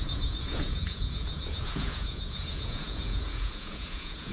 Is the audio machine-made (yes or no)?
yes